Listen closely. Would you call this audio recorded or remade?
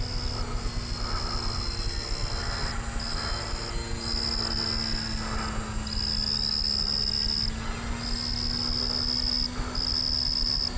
recorded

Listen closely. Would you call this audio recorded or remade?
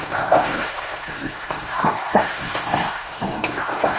remade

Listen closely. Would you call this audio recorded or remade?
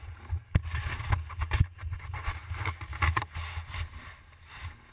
recorded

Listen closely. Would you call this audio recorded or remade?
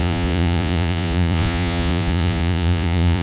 remade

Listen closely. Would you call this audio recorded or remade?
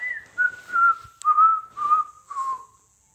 recorded